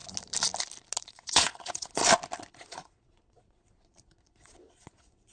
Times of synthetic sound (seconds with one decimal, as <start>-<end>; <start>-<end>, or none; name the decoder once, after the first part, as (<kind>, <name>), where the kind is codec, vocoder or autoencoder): 1.1-2.0 (vocoder, Vocos); 2.5-5.3